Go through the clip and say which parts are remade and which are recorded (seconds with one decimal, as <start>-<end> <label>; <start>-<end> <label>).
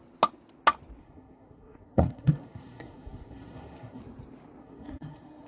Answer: 0.0-1.0 recorded; 1.0-4.0 remade; 4.0-4.6 recorded; 4.6-5.5 remade